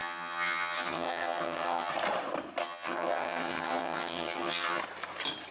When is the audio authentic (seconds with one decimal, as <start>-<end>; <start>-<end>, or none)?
1.9-2.6; 4.8-5.5